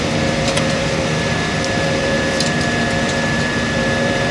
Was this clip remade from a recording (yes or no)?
yes